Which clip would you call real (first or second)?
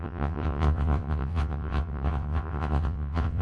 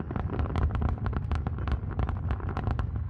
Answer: second